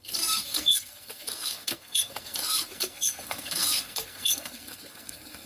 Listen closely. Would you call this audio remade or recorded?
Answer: remade